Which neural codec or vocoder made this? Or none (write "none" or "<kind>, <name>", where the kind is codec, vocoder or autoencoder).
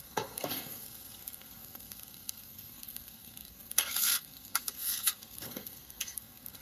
codec, SNAC